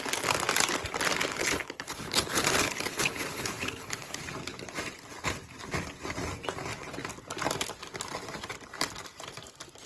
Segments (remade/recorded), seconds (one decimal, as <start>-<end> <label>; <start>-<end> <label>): 0.0-1.3 recorded; 1.3-4.2 remade; 4.2-9.9 recorded